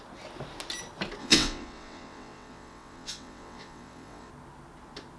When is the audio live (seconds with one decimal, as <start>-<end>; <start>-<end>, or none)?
0.0-1.2; 4.3-5.2